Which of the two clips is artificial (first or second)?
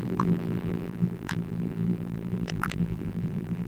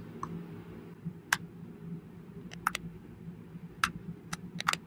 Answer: first